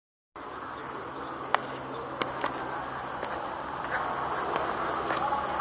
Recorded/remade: recorded